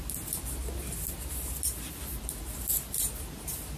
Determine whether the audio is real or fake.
real